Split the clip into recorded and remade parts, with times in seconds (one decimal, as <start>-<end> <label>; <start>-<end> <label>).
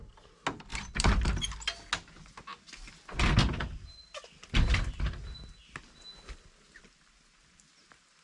0.0-8.2 recorded